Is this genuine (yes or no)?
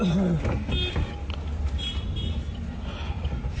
yes